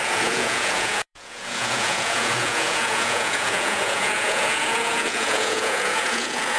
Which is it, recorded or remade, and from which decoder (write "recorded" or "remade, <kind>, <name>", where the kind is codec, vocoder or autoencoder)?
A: remade, vocoder, Vocos